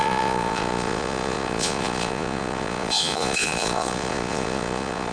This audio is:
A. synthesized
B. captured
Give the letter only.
A